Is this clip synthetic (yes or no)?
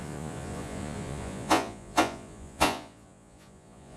yes